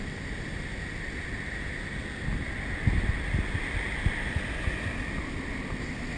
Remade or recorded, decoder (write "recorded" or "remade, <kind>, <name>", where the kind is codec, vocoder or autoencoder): recorded